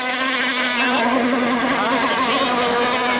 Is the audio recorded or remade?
recorded